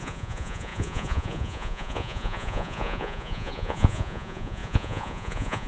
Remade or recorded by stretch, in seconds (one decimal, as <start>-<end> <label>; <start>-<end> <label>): 0.0-5.7 remade